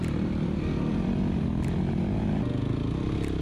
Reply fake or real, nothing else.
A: real